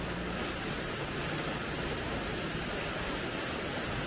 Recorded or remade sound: recorded